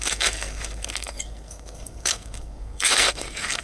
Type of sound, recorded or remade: remade